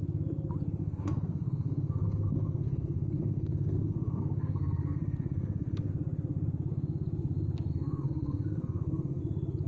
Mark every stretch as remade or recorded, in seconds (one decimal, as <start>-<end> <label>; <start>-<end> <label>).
0.0-0.8 recorded; 0.8-5.9 remade; 5.9-7.7 recorded; 7.7-9.2 remade; 9.2-9.7 recorded